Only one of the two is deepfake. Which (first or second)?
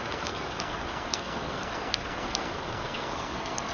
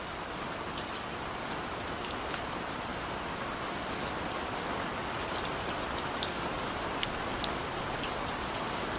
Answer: first